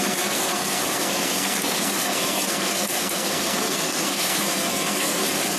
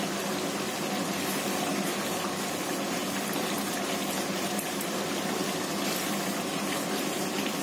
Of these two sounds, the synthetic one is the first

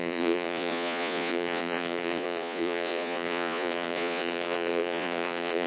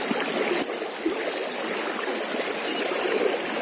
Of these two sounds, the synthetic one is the first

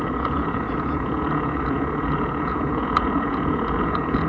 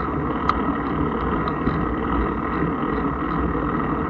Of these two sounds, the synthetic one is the first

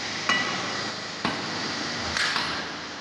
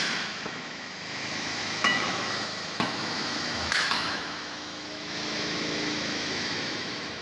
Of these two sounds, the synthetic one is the second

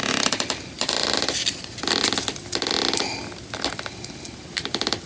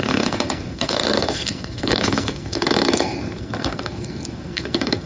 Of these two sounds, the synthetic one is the second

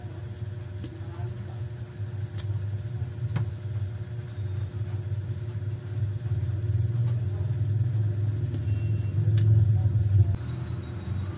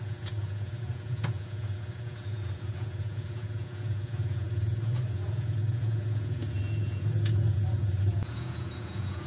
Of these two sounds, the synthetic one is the second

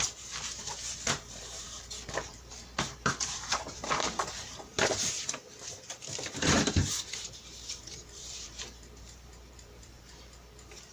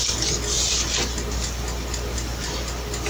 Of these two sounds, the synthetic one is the first